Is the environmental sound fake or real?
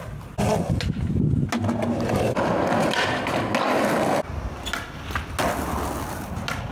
real